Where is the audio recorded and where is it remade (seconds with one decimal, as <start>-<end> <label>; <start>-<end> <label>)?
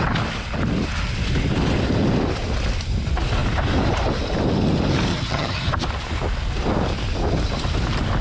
0.0-5.1 recorded; 5.1-5.7 remade; 5.7-8.2 recorded